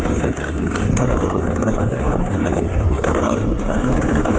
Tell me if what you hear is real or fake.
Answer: fake